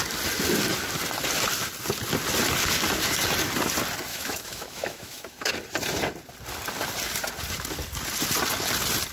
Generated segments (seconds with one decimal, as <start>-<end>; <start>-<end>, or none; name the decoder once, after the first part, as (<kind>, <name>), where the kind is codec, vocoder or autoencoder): 4.1-5.5 (autoencoder, DAC-VAE)